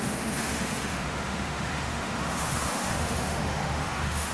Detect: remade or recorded remade